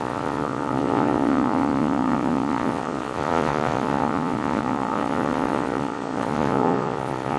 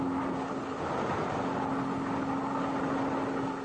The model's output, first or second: first